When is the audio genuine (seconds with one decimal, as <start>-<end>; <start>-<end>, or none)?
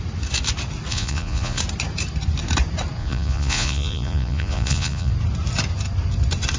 0.0-0.9; 1.6-3.0; 5.1-6.6